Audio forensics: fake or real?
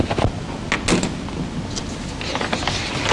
real